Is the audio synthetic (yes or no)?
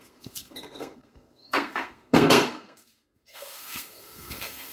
yes